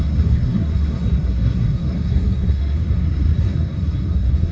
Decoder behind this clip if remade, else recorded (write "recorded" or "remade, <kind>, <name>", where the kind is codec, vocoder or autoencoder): remade, codec, SNAC